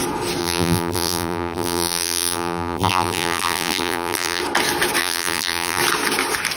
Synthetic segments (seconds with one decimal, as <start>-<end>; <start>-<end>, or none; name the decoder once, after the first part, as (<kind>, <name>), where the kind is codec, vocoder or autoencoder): 0.4-4.4 (vocoder, BigVGAN v2); 5.0-5.8